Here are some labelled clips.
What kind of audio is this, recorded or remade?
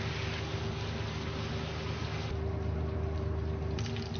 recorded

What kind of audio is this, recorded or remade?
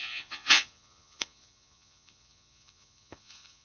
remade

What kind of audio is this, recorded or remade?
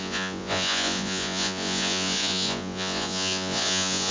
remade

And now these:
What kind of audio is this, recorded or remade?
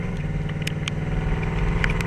recorded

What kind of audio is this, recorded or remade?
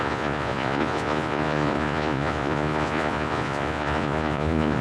remade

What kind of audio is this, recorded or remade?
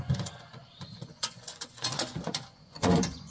remade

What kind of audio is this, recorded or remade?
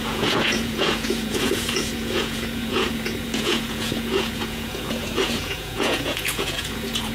remade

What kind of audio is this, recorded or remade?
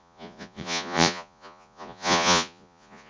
remade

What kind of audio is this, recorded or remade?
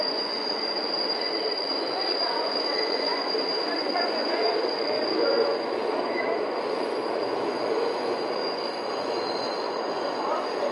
remade